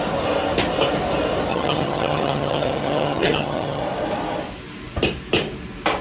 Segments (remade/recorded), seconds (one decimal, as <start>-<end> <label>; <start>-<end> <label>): 0.0-1.5 recorded; 1.5-3.8 remade; 3.8-6.0 recorded